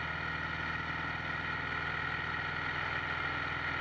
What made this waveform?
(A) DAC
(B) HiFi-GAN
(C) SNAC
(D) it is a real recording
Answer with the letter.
D